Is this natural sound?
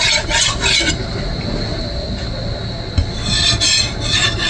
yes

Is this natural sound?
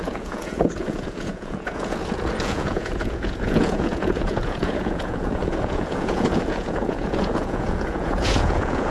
no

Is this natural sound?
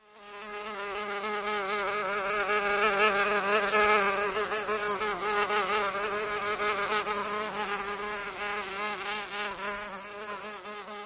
yes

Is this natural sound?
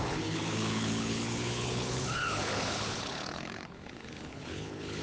no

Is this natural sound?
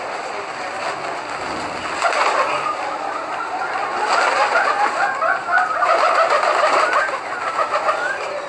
yes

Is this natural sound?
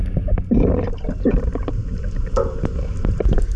yes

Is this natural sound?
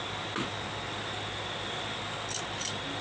yes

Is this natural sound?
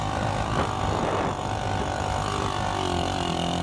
yes